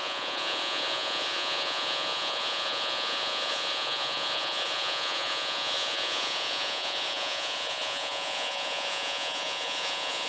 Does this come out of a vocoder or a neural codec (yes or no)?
yes